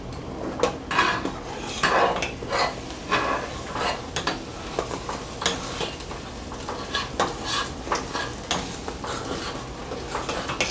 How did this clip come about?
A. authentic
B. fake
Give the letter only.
A